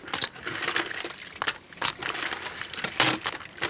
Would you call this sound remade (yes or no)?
no